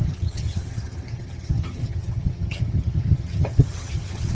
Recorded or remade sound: remade